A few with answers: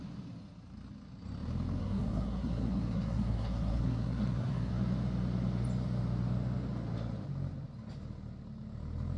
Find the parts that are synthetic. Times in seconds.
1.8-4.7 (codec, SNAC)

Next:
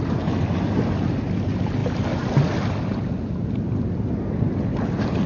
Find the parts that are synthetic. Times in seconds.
none

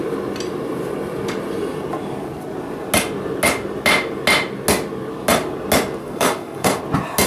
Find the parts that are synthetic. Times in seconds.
6.0-6.8 (codec, SNAC)

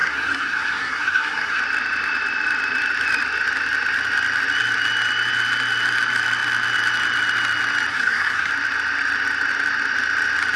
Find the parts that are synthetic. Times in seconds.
0.0-1.6 (codec, SNAC); 7.9-8.5

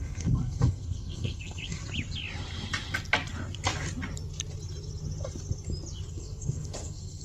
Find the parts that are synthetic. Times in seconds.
0.0-1.8 (codec, SNAC); 6.1-7.2

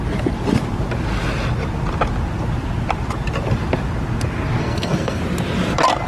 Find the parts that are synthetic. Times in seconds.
4.6-5.2 (codec, SNAC)

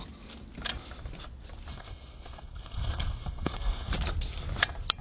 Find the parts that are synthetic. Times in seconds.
1.7-3.9 (codec, SNAC)